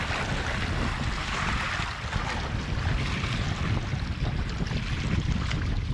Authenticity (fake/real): real